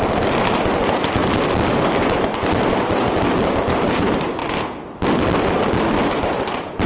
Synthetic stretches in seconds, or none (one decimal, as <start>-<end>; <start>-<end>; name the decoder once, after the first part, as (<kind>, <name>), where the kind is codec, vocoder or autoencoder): 0.0-1.2 (vocoder, BigVGAN v2); 1.7-4.4; 6.2-6.9